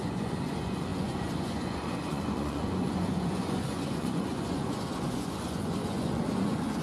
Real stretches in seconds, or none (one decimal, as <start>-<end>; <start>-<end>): none